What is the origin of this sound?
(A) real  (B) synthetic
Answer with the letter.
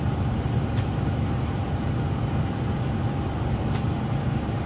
B